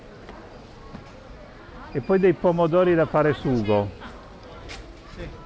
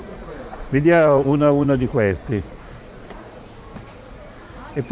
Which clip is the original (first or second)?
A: first